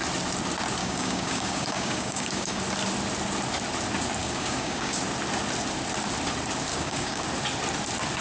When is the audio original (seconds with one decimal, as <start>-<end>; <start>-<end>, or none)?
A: 0.0-0.8; 2.6-4.2; 5.0-6.7; 7.2-8.2